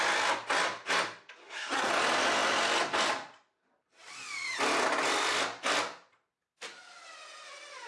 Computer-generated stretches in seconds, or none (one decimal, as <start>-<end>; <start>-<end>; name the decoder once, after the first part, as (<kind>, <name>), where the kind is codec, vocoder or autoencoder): 1.4-1.9 (codec, SNAC)